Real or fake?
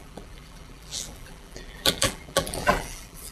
fake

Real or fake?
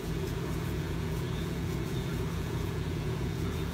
fake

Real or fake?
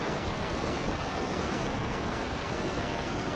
fake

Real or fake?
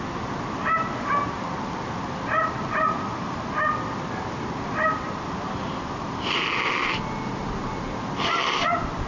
real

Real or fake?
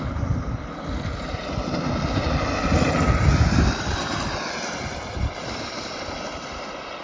real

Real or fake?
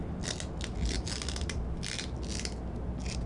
real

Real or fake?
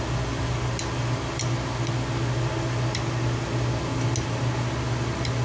real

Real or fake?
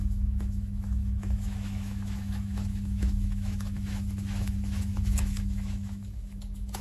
fake